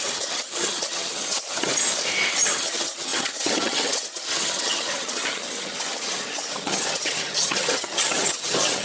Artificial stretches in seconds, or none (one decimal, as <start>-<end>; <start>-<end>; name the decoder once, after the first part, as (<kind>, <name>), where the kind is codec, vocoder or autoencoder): 0.0-1.7 (vocoder, HiFi-GAN); 2.3-8.8